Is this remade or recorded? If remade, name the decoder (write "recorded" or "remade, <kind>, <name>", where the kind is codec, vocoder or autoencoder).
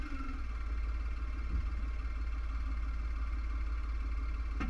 recorded